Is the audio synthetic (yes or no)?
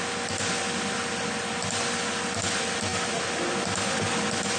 no